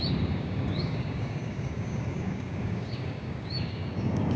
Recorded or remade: remade